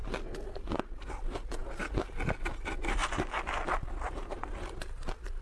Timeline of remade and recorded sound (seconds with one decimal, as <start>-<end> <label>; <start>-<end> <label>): 0.0-3.0 recorded; 3.0-4.5 remade; 4.5-5.4 recorded